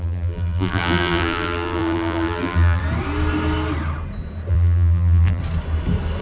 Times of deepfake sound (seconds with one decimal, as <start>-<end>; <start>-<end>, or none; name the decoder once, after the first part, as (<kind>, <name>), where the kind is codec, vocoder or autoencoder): 0.0-2.8 (vocoder, BigVGAN v2); 4.5-5.4